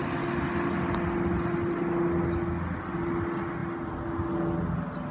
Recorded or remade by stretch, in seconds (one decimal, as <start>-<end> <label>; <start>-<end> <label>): 0.0-5.1 recorded